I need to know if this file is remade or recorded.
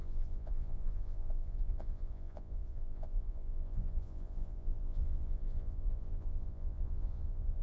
remade